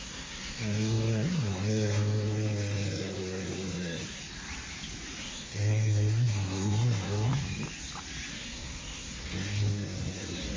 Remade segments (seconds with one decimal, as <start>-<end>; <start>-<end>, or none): 0.0-4.2; 5.2-7.3; 8.3-10.6